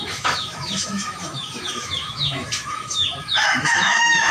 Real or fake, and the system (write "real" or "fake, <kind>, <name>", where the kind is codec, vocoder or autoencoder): fake, autoencoder, DAC-VAE